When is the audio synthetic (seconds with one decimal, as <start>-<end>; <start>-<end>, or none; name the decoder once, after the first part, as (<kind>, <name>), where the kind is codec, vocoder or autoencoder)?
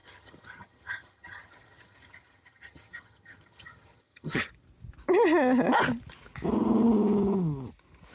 0.0-4.5 (vocoder, HiFi-GAN)